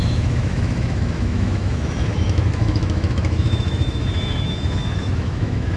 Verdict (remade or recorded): remade